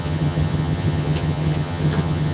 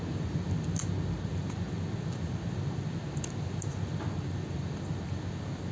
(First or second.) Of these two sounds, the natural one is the second